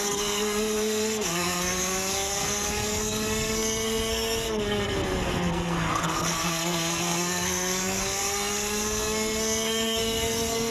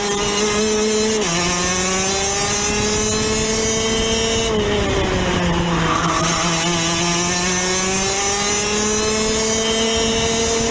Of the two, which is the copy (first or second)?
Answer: first